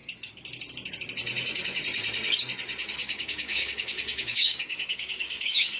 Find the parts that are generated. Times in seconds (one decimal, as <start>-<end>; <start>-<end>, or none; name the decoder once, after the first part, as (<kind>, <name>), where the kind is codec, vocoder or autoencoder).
3.0-5.8 (codec, DAC)